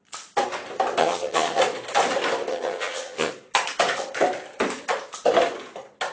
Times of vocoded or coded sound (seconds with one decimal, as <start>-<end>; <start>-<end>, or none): 1.0-1.6; 2.5-3.3